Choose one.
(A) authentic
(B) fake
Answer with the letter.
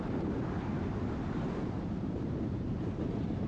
B